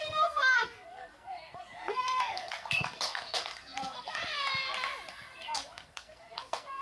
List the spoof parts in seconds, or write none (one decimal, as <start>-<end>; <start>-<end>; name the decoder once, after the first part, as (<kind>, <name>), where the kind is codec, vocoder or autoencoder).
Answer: 0.0-4.2 (codec, SNAC); 5.1-6.8